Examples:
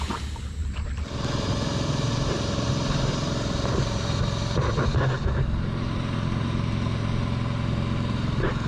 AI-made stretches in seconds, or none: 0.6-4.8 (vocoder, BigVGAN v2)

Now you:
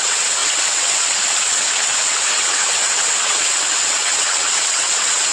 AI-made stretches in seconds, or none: 0.0-5.3 (vocoder, WaveNeXt)

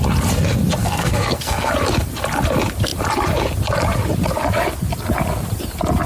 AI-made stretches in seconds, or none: 0.8-1.7 (codec, SNAC)

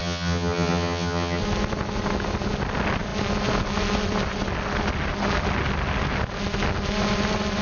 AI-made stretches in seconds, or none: 0.0-1.4 (vocoder, HiFi-GAN)